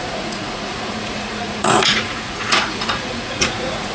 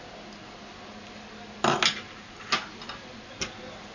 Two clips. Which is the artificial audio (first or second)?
first